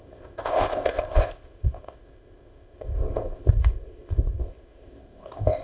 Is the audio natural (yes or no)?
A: no